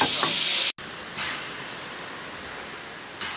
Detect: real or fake real